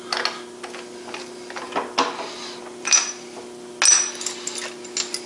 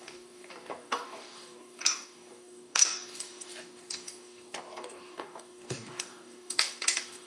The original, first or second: first